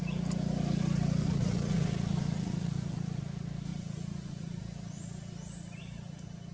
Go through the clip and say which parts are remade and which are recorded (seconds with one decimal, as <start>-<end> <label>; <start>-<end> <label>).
0.0-1.2 recorded; 1.2-3.2 remade; 3.2-3.7 recorded; 3.7-4.6 remade; 4.6-6.5 recorded